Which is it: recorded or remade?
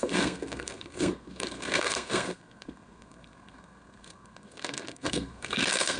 remade